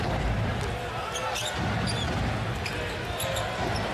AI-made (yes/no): no